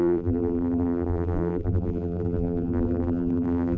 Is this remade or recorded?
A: remade